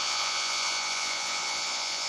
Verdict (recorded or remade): remade